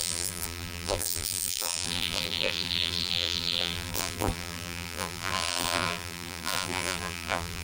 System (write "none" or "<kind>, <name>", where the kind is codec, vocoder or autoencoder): vocoder, BigVGAN v2